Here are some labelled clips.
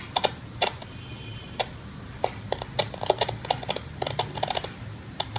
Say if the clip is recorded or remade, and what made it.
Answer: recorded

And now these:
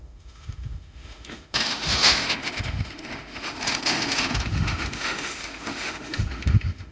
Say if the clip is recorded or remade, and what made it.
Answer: remade, autoencoder, DAC-VAE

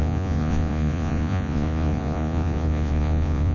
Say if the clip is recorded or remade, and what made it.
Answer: remade, vocoder, Vocos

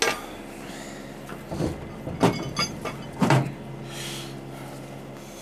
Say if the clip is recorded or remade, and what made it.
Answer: recorded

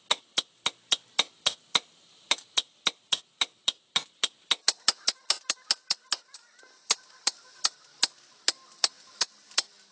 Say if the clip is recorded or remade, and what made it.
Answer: recorded